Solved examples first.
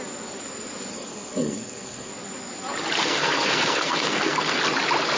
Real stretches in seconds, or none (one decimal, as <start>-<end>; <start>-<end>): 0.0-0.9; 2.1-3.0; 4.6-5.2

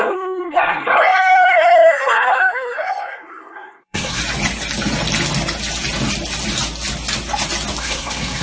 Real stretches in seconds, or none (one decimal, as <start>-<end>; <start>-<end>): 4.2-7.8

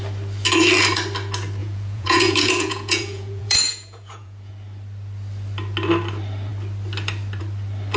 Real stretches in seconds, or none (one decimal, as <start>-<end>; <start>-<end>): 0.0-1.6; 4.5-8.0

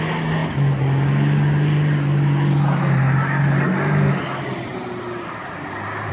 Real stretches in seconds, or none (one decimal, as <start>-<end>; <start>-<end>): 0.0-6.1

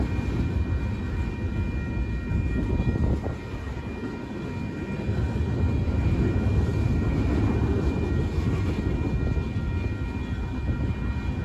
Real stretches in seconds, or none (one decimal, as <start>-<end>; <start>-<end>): 0.0-11.4

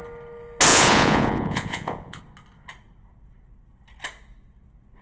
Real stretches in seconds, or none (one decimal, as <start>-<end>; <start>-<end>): 0.0-0.7; 2.2-5.0

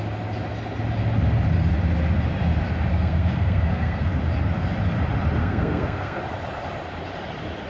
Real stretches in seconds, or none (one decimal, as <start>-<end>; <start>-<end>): 0.0-2.9; 4.2-5.4; 6.2-7.7

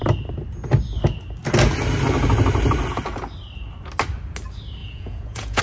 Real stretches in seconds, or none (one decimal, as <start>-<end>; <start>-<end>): 0.0-4.8